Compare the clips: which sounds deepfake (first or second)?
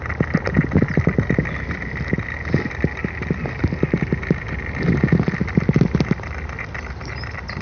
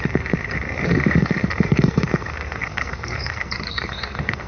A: second